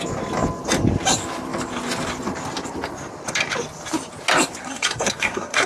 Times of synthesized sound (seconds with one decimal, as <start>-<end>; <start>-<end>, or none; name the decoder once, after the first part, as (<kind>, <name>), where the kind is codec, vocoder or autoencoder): 4.6-5.7 (codec, SNAC)